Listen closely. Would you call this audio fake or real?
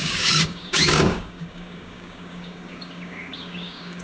fake